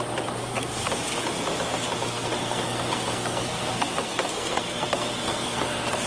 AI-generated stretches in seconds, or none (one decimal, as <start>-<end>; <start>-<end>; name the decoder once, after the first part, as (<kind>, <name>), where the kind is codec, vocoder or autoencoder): 0.4-0.9 (codec, SNAC); 2.0-6.1